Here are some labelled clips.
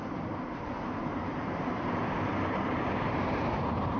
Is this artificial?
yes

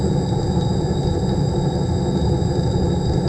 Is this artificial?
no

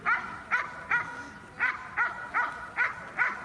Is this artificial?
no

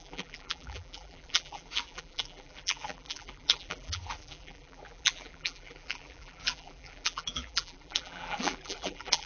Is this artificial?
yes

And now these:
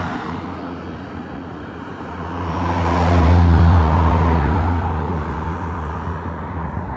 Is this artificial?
yes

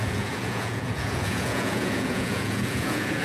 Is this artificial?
yes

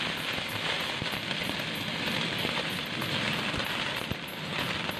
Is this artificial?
no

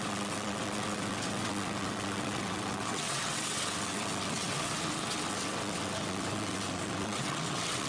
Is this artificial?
yes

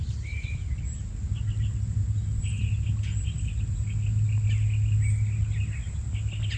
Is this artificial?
no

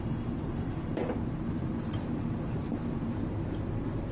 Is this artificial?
yes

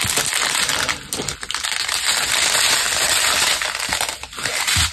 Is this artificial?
no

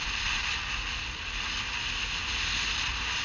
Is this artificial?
no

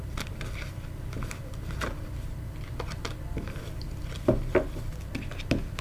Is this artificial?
no